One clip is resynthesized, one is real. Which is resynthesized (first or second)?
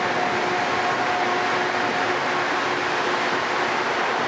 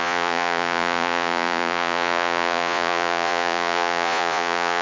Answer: second